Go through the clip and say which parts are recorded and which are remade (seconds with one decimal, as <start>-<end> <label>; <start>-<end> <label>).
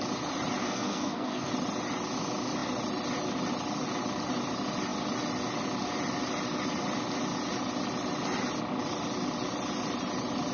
0.0-0.6 recorded; 0.6-1.5 remade; 1.5-10.5 recorded